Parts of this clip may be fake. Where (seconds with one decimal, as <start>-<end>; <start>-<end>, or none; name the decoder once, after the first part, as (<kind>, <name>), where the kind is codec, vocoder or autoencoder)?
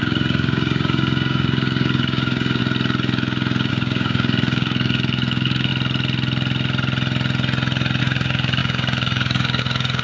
0.0-2.6 (codec, DAC); 3.7-5.7; 8.0-10.0